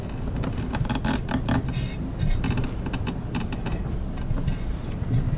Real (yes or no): yes